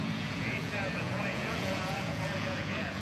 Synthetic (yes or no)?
yes